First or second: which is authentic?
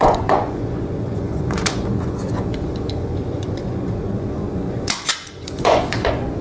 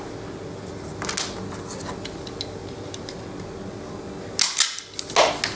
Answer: second